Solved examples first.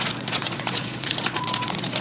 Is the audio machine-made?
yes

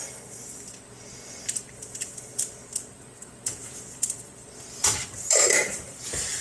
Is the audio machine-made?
no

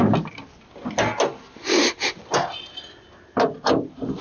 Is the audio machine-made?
no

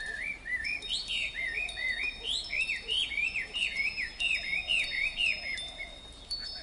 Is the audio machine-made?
yes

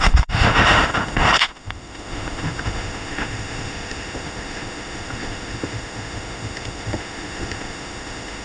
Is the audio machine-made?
yes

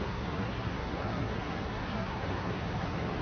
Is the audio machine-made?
yes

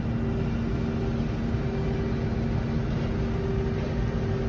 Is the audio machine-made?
no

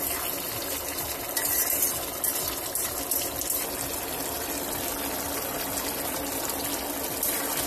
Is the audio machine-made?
no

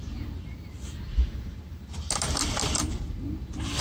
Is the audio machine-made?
yes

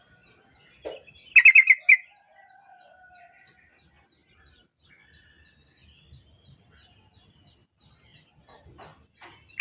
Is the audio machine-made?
no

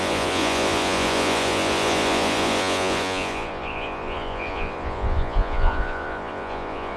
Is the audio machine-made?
yes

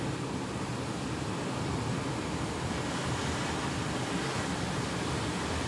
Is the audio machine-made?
no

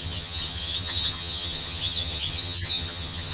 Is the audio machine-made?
yes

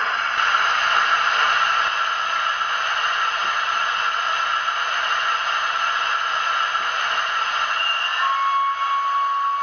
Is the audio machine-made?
no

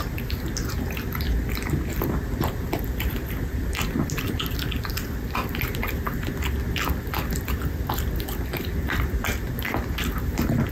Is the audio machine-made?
no